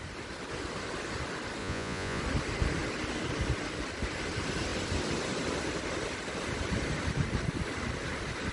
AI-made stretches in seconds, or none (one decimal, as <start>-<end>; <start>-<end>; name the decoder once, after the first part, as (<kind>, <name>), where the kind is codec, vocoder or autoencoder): 1.6-2.2 (vocoder, Vocos)